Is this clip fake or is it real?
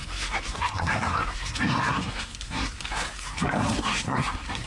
fake